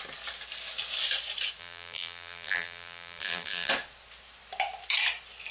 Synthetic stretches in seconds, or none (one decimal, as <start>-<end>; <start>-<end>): 1.6-3.7